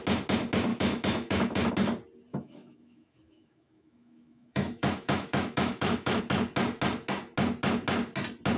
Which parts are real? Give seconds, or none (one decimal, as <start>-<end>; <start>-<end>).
0.0-0.7; 1.7-2.3; 6.2-8.6